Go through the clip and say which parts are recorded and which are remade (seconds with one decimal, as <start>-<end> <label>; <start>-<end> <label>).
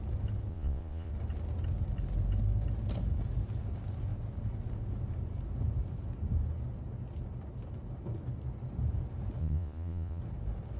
0.0-0.5 recorded; 0.5-1.1 remade; 1.1-9.4 recorded; 9.4-10.2 remade; 10.2-10.8 recorded